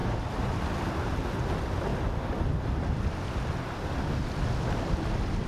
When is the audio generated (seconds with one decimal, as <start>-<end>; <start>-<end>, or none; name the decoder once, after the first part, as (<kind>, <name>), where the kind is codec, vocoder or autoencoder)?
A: 0.0-0.9 (vocoder, BigVGAN v2); 1.9-3.5